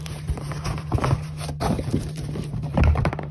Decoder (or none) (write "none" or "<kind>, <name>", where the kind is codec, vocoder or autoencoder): vocoder, BigVGAN v2